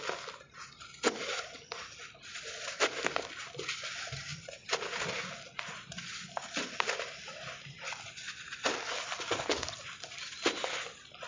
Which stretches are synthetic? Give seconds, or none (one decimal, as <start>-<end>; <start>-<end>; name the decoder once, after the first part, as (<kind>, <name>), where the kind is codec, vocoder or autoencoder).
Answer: none